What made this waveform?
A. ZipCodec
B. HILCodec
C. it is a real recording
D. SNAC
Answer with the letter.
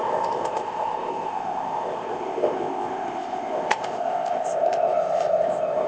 A